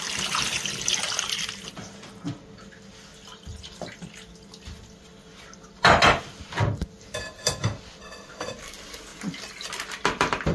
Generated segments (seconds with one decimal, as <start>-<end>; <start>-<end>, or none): none